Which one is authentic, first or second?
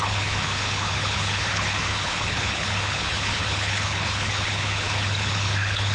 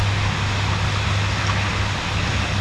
second